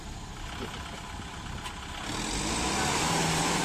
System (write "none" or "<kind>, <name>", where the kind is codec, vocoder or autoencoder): none